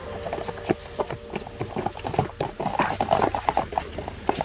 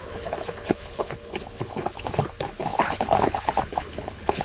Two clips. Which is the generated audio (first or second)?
second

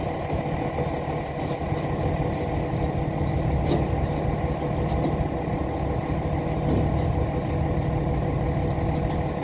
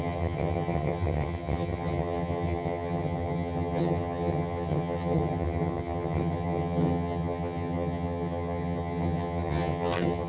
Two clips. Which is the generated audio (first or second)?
second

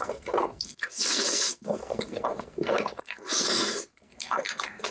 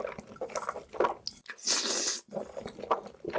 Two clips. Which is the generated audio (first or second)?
first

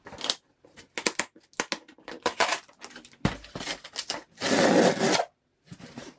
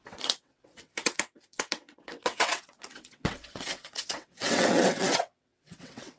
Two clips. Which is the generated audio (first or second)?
second